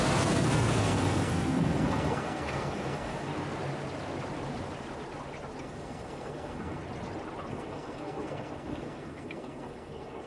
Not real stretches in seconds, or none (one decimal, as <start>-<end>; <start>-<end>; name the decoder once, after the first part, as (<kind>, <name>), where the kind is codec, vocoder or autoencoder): 0.0-3.3 (codec, SNAC); 5.6-6.8; 7.5-10.3